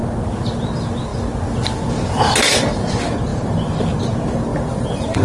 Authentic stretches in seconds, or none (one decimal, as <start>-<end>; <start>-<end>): 0.0-4.5